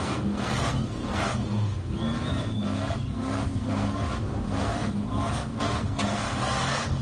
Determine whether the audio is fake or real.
fake